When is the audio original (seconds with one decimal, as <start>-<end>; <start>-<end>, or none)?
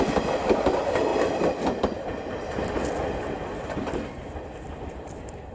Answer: 0.0-5.5